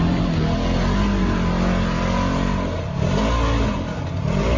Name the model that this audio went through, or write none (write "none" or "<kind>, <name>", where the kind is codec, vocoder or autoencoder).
none